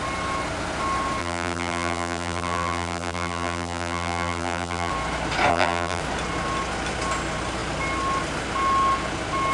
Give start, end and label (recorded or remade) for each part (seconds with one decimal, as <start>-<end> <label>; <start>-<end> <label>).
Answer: 0.0-1.2 recorded; 1.2-4.9 remade; 4.9-5.5 recorded; 5.5-6.0 remade; 6.0-9.5 recorded